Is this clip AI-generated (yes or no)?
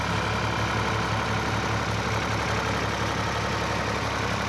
no